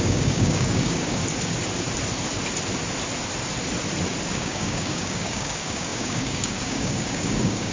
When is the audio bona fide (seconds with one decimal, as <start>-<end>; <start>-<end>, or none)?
1.2-4.3